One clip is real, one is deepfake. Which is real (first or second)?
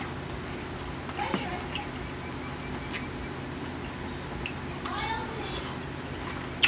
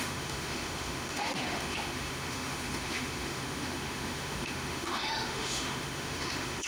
first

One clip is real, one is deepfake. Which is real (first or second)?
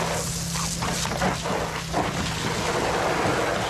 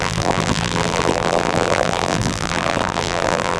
first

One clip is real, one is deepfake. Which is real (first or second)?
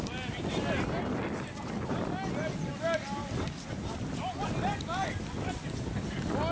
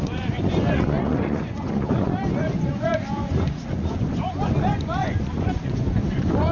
first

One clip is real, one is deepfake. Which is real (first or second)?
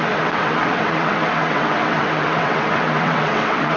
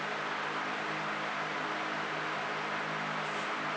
second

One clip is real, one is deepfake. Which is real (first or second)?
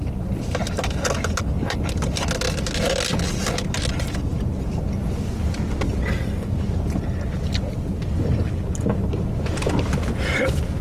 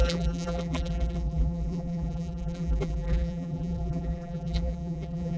first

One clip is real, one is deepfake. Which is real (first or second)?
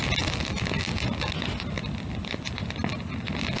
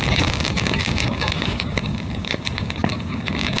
first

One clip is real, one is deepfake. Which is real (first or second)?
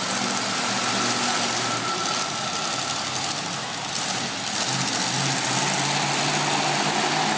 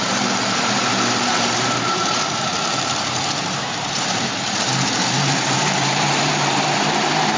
first